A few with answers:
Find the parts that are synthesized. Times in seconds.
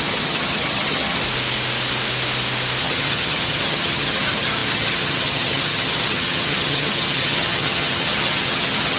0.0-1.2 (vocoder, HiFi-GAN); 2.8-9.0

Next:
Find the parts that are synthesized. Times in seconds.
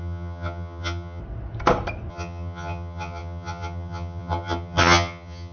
0.0-1.2 (vocoder, HiFi-GAN); 2.1-5.5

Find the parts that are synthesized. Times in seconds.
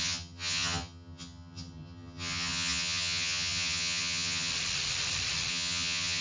0.0-4.5 (vocoder, HiFi-GAN); 5.5-6.2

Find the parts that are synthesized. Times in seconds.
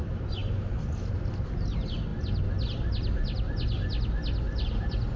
none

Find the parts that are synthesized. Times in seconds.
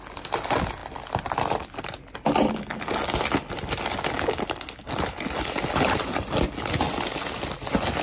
none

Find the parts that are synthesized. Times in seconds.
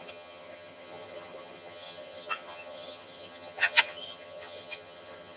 0.0-5.4 (vocoder, HiFi-GAN)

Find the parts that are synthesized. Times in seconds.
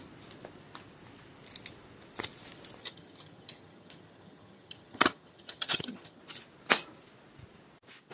2.8-6.2 (vocoder, HiFi-GAN)